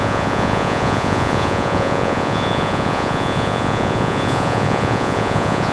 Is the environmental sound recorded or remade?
remade